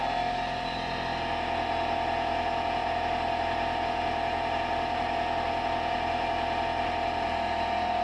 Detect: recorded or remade recorded